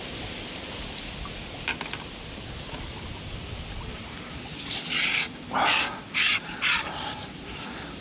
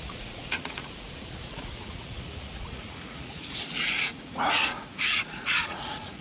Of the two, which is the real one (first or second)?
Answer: first